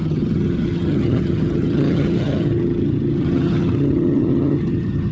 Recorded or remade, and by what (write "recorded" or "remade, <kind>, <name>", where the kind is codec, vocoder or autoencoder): remade, vocoder, HiFi-GAN